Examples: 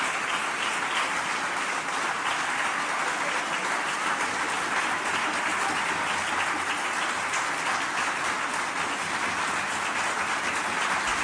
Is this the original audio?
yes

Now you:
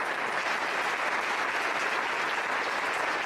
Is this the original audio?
yes